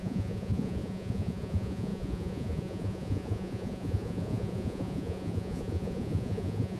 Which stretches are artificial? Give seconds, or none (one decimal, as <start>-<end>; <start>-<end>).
0.0-6.8